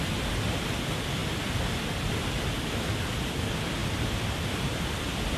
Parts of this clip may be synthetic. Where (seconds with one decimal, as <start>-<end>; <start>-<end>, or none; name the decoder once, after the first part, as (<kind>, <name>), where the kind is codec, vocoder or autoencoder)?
0.0-1.2 (vocoder, BigVGAN v2); 2.4-5.4